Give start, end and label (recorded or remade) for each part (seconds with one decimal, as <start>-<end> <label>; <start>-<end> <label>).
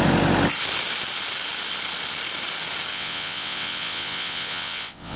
0.0-2.9 recorded; 2.9-5.2 remade